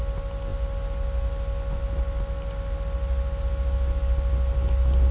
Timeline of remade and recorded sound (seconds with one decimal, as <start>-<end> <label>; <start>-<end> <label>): 0.0-5.1 recorded